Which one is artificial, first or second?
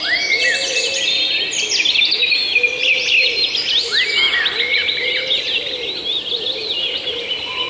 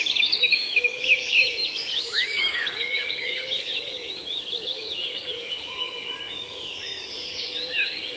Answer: second